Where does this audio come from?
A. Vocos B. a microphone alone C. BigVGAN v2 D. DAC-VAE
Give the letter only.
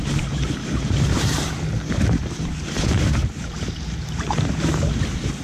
C